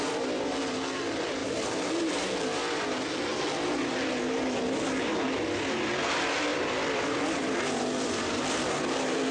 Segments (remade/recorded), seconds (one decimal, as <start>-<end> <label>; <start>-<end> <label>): 0.0-1.4 recorded; 1.4-1.9 remade; 1.9-6.5 recorded; 6.5-8.5 remade; 8.5-9.3 recorded